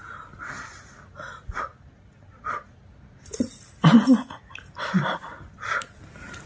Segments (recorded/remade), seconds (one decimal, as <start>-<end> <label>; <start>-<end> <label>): 0.0-6.5 recorded